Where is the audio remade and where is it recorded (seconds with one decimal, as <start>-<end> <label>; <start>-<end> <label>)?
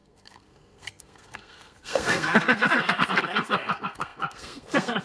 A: 0.0-5.0 remade